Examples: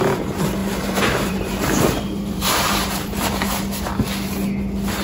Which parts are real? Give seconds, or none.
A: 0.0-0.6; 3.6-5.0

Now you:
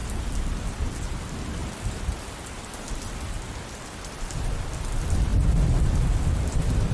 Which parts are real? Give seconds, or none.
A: 1.6-3.0

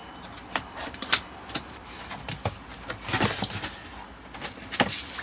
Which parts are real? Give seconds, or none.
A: 1.9-5.2

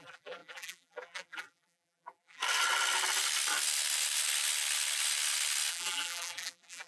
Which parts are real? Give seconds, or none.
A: 2.4-5.7

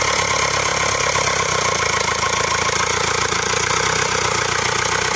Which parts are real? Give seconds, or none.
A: 0.0-0.7; 3.8-5.2

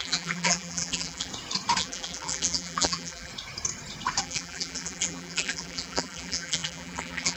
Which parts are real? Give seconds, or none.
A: 1.3-1.8; 3.3-4.2

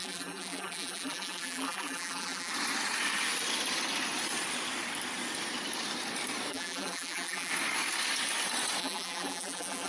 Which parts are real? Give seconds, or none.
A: 2.5-6.5; 7.5-8.8